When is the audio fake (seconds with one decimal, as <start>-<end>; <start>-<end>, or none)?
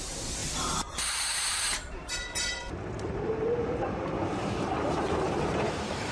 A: 0.0-0.4; 1.0-6.1